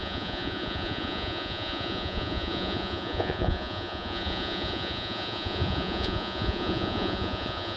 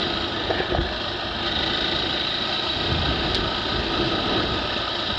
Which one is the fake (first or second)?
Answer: first